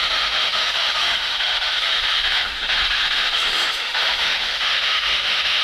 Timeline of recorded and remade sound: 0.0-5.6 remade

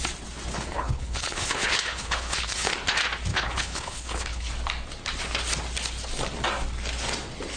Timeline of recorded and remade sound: 0.0-0.5 recorded; 0.5-2.7 remade; 2.7-3.3 recorded; 3.3-4.5 remade; 4.5-7.6 recorded

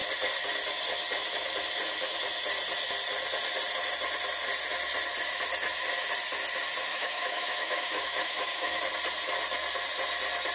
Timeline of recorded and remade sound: 0.0-6.9 recorded; 6.9-8.8 remade; 8.8-10.5 recorded

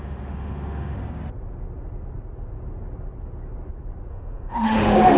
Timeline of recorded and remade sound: 0.0-1.0 remade; 1.0-4.1 recorded; 4.1-5.2 remade

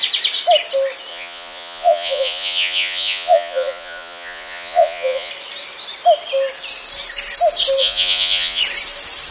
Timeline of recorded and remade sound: 0.0-1.1 recorded; 1.1-5.3 remade; 5.3-7.8 recorded; 7.8-8.6 remade; 8.6-9.3 recorded

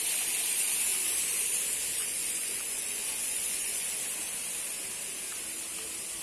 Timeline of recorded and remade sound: 0.0-2.0 recorded; 2.0-3.9 remade; 3.9-6.2 recorded

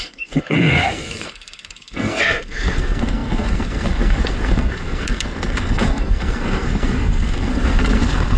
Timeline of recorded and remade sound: 0.0-8.4 remade